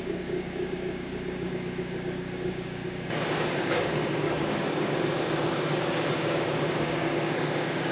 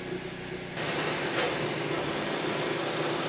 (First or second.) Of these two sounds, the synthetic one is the first